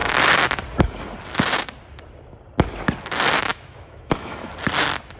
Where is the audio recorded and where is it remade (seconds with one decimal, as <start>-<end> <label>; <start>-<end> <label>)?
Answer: 0.0-3.5 recorded; 3.5-4.5 remade; 4.5-5.2 recorded

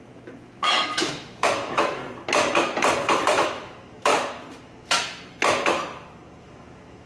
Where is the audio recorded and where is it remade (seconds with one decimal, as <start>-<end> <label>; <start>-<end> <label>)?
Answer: 0.0-2.0 remade; 2.0-3.3 recorded; 3.3-4.1 remade; 4.1-4.6 recorded; 4.6-5.0 remade; 5.0-6.4 recorded; 6.4-7.1 remade

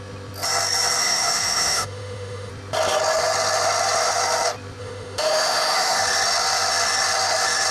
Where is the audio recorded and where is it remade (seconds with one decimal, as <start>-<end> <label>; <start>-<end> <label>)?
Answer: 0.0-1.0 recorded; 1.0-2.5 remade; 2.5-4.8 recorded; 4.8-6.0 remade; 6.0-7.7 recorded

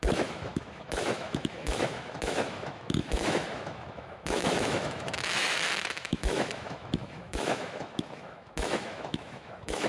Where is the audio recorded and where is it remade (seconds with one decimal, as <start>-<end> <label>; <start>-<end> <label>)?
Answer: 0.0-9.9 remade

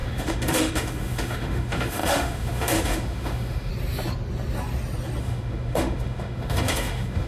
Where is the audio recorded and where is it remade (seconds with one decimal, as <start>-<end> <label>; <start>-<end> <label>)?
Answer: 0.0-3.7 remade; 3.7-5.2 recorded; 5.2-7.3 remade

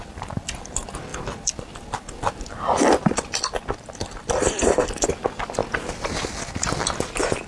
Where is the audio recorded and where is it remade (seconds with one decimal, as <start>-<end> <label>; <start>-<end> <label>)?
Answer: 0.0-7.5 recorded